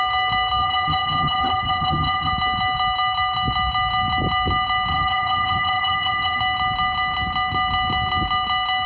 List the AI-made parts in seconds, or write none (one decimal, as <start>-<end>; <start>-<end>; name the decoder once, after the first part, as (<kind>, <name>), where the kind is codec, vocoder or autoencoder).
0.6-2.3 (vocoder, HiFi-GAN); 4.9-6.4